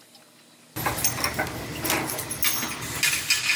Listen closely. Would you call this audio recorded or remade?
recorded